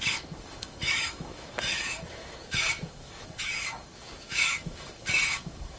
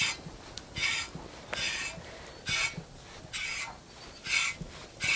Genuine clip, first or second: second